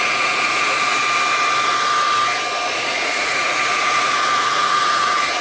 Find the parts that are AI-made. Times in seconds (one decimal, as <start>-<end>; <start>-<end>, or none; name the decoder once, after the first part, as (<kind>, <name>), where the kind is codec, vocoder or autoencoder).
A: 0.0-1.0 (vocoder, Vocos); 2.7-5.4

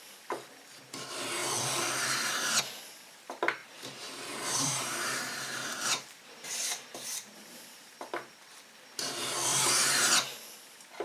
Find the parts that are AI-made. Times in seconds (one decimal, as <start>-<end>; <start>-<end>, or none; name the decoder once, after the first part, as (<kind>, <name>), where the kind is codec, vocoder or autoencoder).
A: 3.6-7.9 (vocoder, BigVGAN v2); 9.5-10.1

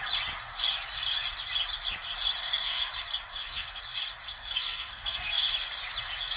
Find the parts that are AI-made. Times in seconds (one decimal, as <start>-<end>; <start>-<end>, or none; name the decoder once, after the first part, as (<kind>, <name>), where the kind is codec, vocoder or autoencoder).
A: 2.4-2.9 (codec, SNAC); 3.3-3.8; 4.3-5.4

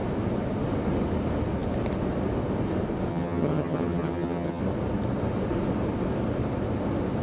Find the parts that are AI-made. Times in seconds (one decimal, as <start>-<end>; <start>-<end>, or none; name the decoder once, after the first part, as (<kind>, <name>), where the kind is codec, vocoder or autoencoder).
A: 3.1-4.6 (vocoder, HiFi-GAN)

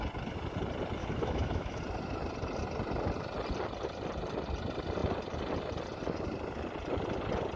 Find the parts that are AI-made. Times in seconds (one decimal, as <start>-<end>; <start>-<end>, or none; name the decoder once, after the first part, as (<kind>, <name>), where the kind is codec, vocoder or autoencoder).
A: 1.0-1.8 (autoencoder, DAC-VAE)

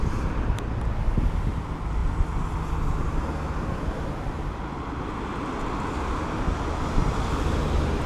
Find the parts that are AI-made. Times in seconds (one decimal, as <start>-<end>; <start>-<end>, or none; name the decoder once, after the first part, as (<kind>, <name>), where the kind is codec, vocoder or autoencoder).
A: none

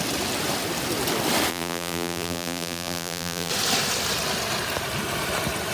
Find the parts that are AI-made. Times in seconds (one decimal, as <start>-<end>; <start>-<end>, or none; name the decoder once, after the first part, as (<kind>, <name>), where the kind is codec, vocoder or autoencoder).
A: 1.5-3.5 (vocoder, BigVGAN v2)